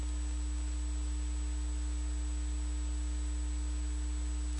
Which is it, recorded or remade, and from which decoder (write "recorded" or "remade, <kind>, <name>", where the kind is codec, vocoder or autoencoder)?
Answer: recorded